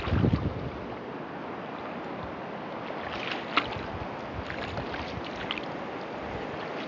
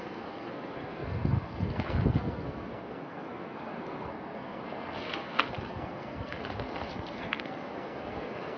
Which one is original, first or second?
first